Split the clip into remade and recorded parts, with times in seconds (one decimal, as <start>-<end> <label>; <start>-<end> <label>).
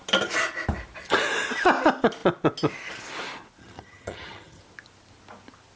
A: 0.0-3.6 recorded; 3.6-4.6 remade; 4.6-5.8 recorded